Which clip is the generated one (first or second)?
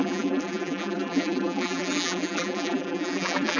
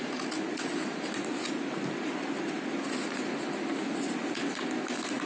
first